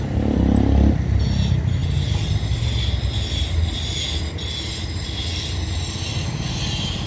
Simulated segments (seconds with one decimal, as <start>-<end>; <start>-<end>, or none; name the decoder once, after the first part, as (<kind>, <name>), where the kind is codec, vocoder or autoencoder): none